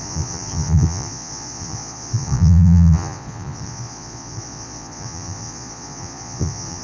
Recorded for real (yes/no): no